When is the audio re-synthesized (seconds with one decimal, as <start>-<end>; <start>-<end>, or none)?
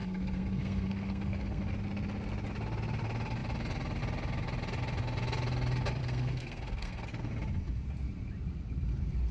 0.0-1.6; 6.0-7.3